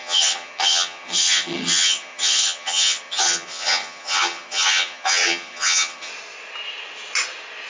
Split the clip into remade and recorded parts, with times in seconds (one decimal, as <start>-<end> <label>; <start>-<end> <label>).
0.0-6.1 remade; 6.1-7.7 recorded